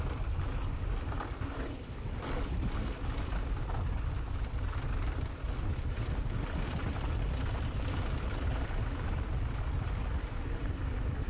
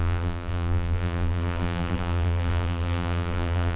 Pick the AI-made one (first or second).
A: second